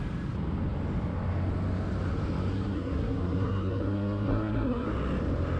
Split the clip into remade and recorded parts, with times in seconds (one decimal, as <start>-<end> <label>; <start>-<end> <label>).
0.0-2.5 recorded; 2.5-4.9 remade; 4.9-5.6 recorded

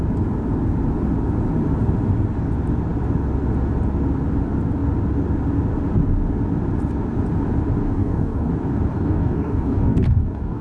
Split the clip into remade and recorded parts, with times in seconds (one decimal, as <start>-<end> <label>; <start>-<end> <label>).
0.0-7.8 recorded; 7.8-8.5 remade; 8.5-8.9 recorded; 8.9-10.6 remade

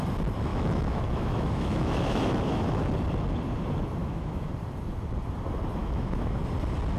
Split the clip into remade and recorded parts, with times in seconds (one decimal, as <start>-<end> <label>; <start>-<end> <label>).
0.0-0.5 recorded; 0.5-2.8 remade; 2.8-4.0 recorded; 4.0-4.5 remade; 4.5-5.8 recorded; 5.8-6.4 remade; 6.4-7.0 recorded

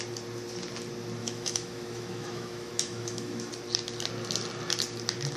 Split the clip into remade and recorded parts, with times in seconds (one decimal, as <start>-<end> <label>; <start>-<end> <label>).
0.0-1.2 recorded; 1.2-3.5 remade; 3.5-5.4 recorded